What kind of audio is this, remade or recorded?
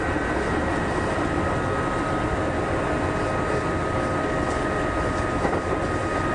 recorded